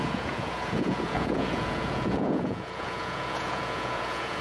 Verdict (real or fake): fake